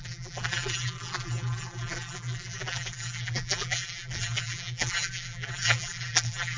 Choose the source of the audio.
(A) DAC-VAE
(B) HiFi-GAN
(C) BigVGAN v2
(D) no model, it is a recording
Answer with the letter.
C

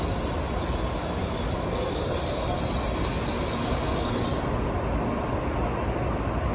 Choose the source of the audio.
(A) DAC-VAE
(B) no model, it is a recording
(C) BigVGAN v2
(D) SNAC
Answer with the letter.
B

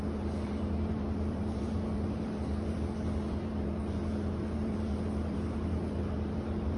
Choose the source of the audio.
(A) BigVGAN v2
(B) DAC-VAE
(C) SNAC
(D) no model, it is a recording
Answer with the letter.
A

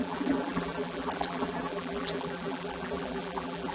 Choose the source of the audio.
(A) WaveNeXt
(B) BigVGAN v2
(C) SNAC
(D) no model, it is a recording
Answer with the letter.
B